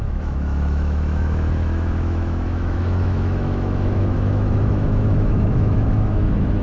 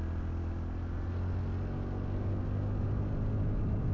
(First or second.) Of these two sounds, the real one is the second